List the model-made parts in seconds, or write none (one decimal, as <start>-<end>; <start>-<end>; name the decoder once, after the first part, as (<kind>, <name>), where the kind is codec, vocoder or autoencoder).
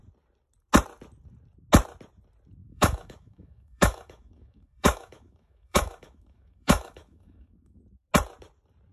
2.6-7.8 (autoencoder, DAC-VAE)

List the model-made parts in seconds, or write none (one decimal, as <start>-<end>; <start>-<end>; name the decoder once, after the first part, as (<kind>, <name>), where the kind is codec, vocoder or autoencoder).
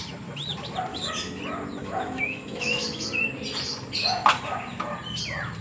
0.9-1.4 (autoencoder, DAC-VAE); 1.8-3.1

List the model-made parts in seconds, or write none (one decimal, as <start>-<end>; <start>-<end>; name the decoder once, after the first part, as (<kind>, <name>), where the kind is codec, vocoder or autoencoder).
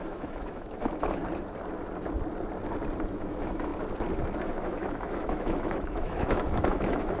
0.0-1.2 (autoencoder, DAC-VAE); 3.1-3.7; 4.4-7.2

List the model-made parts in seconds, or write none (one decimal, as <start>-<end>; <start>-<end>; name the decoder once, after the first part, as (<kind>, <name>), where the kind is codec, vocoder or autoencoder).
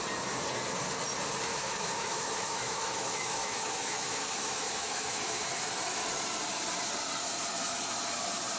1.5-5.5 (autoencoder, DAC-VAE)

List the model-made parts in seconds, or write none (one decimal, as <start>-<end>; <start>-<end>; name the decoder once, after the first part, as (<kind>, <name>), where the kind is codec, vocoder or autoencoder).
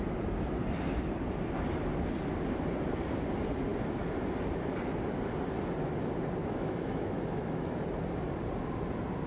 6.4-7.7 (autoencoder, DAC-VAE)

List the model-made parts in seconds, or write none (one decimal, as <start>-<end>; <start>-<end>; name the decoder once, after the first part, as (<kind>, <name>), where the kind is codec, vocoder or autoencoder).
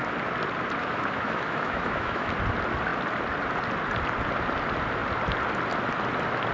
0.8-2.3 (autoencoder, DAC-VAE)